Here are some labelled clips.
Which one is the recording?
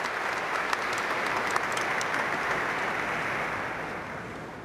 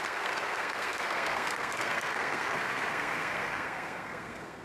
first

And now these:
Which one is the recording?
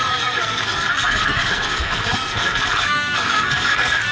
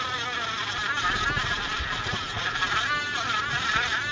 second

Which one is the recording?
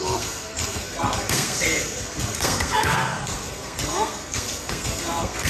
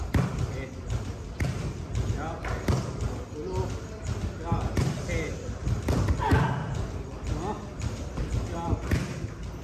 second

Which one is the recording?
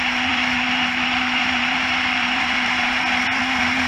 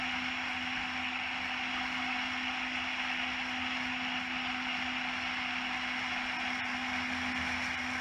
second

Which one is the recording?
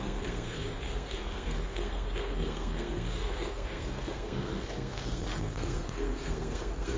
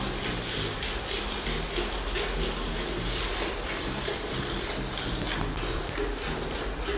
second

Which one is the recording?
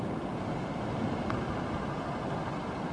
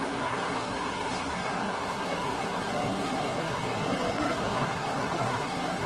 first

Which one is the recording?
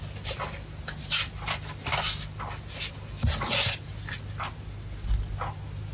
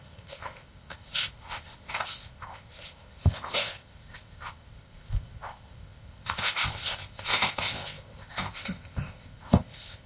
first